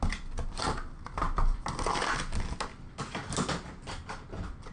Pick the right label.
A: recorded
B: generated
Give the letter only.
A